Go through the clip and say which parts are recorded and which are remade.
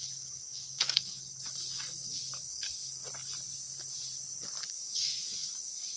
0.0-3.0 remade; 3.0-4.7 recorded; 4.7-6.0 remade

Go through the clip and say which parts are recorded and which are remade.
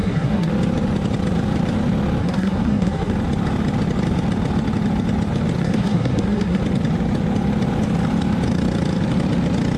0.0-0.5 remade; 0.5-2.2 recorded; 2.2-3.1 remade; 3.1-5.6 recorded; 5.6-6.6 remade; 6.6-9.8 recorded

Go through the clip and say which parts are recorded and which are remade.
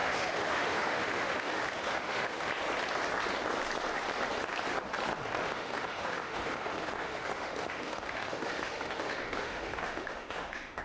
0.0-2.5 remade; 2.5-5.4 recorded; 5.4-10.8 remade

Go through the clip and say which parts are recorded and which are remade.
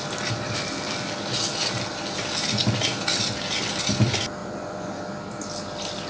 0.0-4.4 recorded; 4.4-5.0 remade; 5.0-6.1 recorded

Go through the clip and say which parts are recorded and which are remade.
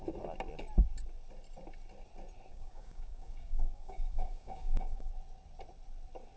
0.0-2.5 recorded; 2.5-5.1 remade; 5.1-6.4 recorded